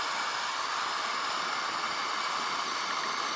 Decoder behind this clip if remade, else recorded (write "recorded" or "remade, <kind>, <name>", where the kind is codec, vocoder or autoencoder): recorded